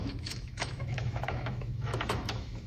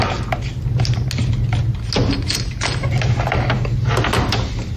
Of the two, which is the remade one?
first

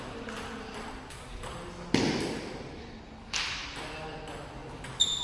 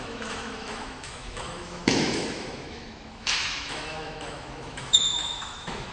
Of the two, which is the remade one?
second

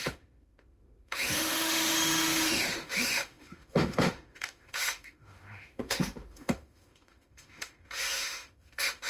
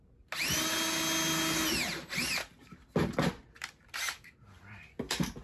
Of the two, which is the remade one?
first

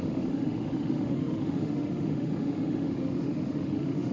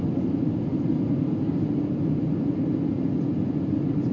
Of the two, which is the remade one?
first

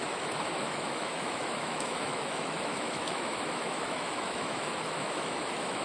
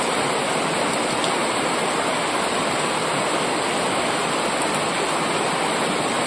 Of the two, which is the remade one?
first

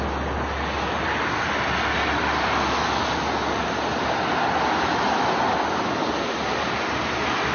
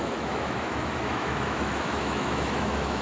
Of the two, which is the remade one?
second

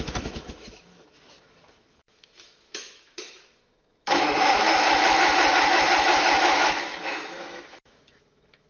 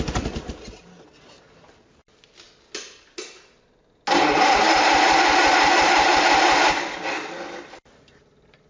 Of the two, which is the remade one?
first